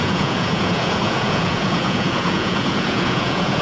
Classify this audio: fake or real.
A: fake